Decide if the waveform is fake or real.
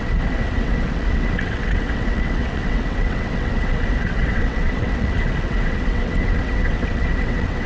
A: fake